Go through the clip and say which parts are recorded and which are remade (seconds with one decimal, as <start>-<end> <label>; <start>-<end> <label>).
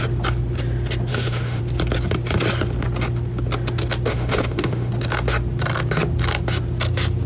0.0-1.1 recorded; 1.1-1.6 remade; 1.6-4.1 recorded; 4.1-4.9 remade; 4.9-7.3 recorded